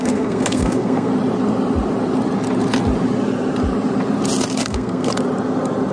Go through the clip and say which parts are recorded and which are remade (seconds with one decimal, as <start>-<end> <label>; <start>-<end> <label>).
0.0-1.1 remade; 1.1-4.6 recorded; 4.6-5.1 remade; 5.1-5.9 recorded